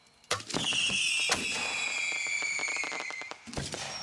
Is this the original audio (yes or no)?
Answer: yes